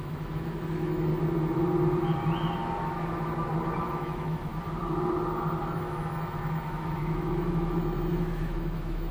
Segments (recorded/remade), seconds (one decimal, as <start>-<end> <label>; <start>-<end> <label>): 0.0-1.1 remade; 1.1-3.8 recorded; 3.8-4.5 remade; 4.5-5.6 recorded; 5.6-9.1 remade